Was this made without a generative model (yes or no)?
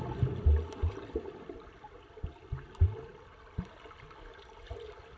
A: yes